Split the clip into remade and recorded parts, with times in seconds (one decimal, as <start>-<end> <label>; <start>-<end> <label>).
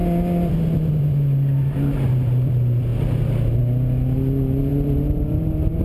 0.0-4.7 recorded; 4.7-5.8 remade